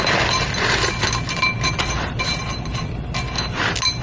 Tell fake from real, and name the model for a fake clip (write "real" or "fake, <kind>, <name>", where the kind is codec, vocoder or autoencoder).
real